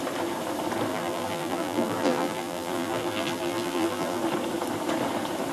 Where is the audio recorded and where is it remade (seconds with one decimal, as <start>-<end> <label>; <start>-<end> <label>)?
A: 0.0-0.9 recorded; 0.9-4.2 remade; 4.2-5.5 recorded